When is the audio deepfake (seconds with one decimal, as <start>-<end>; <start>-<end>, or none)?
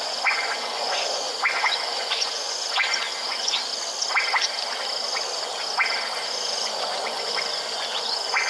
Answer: 0.0-3.7; 6.2-8.5